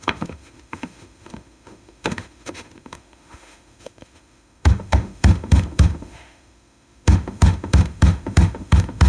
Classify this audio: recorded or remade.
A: remade